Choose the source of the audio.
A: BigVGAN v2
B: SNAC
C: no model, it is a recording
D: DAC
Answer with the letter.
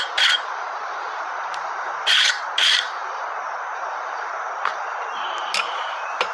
A